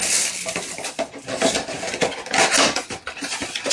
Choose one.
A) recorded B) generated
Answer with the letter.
B